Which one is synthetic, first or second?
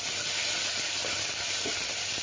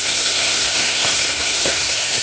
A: second